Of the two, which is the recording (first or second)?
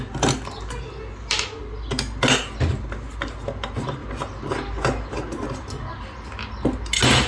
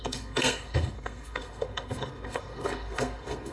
first